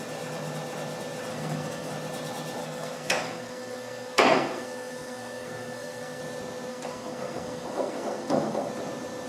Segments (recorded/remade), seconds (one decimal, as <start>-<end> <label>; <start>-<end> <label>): 0.0-1.3 recorded; 1.3-1.9 remade; 1.9-2.6 recorded; 2.6-6.2 remade; 6.2-6.7 recorded; 6.7-8.7 remade; 8.7-9.3 recorded